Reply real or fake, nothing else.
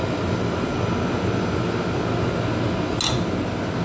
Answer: real